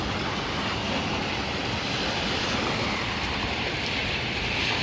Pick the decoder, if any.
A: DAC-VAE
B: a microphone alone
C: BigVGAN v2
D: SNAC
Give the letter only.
B